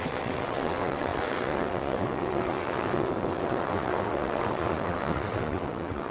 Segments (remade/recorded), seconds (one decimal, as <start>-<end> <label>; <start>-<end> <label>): 0.0-6.1 remade